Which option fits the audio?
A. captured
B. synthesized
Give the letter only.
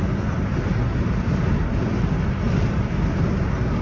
A